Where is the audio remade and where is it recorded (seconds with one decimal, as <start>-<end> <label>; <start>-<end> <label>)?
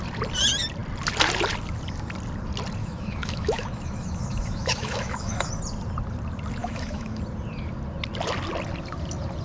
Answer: 0.0-2.8 recorded; 2.8-5.5 remade; 5.5-6.6 recorded; 6.6-7.2 remade; 7.2-9.4 recorded